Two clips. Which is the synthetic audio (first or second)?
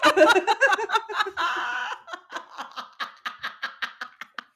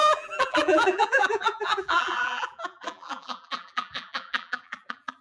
second